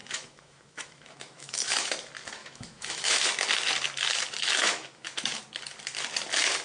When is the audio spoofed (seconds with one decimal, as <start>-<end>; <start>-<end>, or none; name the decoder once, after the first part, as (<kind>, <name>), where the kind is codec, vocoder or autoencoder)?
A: 0.0-1.9 (autoencoder, DAC-VAE); 2.4-3.3; 4.4-5.4